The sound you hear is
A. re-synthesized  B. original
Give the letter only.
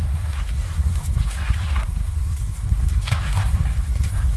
A